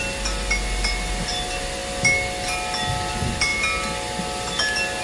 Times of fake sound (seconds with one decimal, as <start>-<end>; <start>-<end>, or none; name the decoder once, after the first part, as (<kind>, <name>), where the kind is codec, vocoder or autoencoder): none